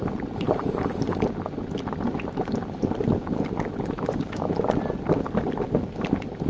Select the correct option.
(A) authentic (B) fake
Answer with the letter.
A